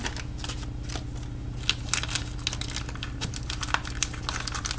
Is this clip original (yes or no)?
yes